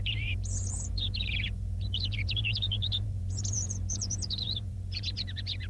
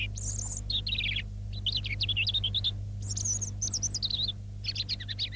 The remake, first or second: first